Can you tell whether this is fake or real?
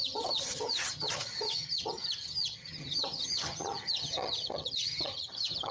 fake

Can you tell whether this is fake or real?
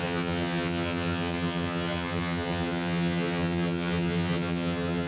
fake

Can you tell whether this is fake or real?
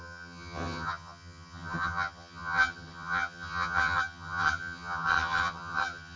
fake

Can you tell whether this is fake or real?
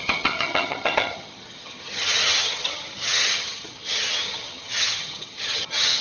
fake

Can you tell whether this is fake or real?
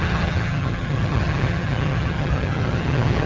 fake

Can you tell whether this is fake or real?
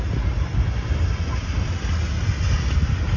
real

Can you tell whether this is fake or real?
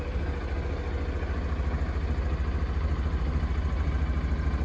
real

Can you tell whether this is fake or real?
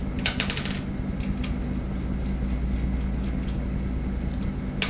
real